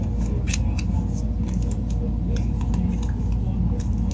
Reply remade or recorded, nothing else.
recorded